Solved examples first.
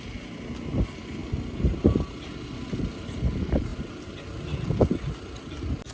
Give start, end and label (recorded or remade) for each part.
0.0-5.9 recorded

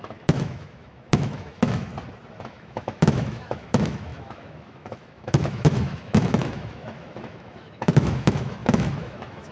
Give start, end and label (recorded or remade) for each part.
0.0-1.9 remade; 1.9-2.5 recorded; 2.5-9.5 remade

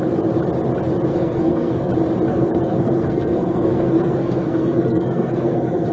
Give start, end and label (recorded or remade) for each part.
0.0-1.1 recorded; 1.1-1.9 remade; 1.9-2.3 recorded; 2.3-5.9 remade